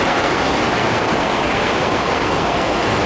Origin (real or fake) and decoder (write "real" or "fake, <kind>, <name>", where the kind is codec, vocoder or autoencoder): fake, codec, SNAC